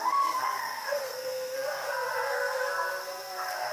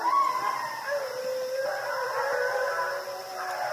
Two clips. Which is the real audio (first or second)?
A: second